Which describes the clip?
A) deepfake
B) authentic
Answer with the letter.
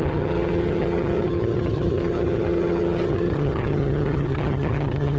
A